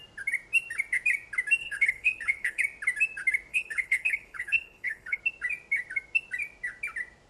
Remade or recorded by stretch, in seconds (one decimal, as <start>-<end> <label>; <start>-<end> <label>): 0.0-1.6 recorded; 1.6-2.6 remade; 2.6-3.5 recorded; 3.5-5.2 remade; 5.2-7.3 recorded